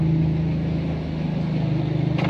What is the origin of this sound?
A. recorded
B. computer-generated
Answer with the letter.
A